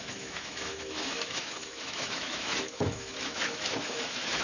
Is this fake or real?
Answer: fake